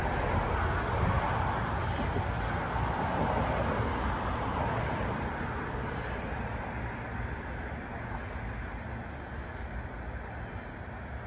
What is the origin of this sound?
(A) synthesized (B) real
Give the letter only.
B